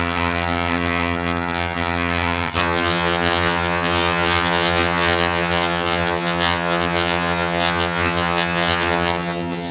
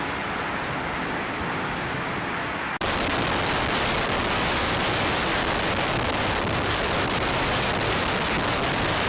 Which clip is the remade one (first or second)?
first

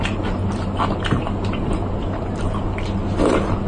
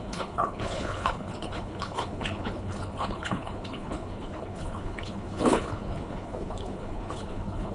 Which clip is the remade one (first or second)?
second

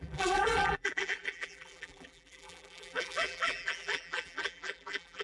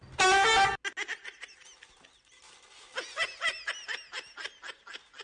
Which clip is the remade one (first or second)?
first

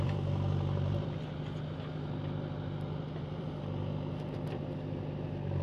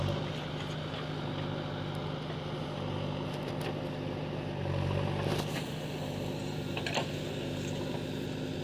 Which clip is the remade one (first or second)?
first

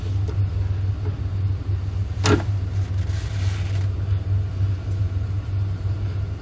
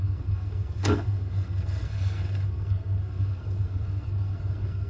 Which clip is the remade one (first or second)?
second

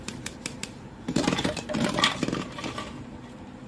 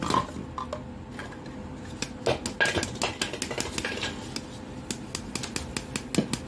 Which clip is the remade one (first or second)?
first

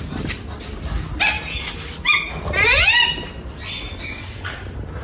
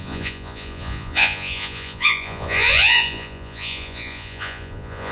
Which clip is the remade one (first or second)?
second